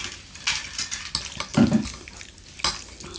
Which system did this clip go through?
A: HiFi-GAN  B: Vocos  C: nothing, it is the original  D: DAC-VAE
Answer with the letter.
C